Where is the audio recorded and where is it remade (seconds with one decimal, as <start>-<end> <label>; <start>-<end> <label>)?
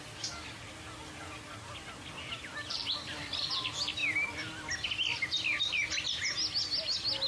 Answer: 0.0-7.3 recorded